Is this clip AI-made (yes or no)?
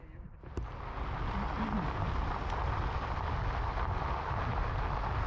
no